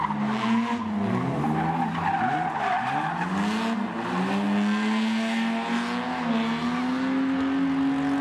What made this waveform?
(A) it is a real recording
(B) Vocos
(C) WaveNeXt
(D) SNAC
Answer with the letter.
A